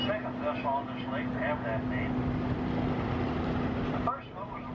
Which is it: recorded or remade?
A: recorded